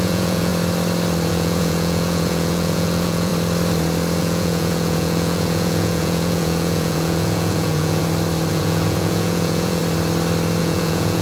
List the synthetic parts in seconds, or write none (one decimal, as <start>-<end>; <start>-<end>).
0.0-0.5; 1.3-3.3; 4.2-8.0; 8.5-9.8; 10.6-11.2